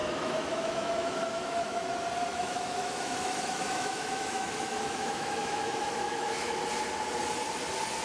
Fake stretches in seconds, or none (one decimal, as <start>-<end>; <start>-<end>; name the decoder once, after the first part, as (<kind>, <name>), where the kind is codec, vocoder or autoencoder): 0.0-1.9 (autoencoder, DAC-VAE); 2.3-6.6